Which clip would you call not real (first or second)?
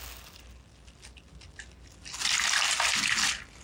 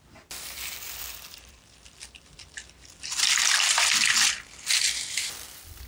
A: second